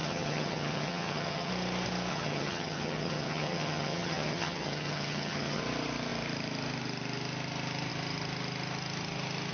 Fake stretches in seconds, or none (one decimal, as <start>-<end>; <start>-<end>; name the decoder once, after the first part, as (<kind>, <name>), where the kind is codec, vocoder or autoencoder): 0.0-1.5 (vocoder, HiFi-GAN); 2.1-5.6